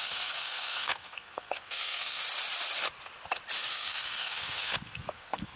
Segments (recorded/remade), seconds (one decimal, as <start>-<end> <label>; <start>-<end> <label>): 0.0-2.2 remade; 2.2-3.7 recorded; 3.7-5.6 remade